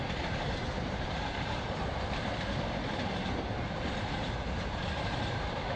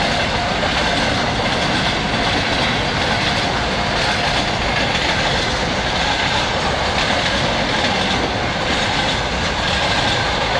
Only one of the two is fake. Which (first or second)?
first